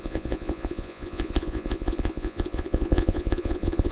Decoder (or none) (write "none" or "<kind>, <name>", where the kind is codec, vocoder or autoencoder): vocoder, Vocos